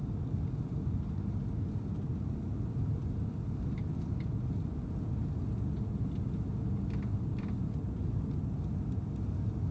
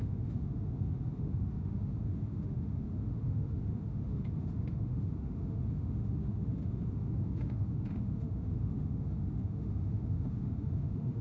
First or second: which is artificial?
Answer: second